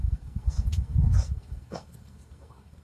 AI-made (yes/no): yes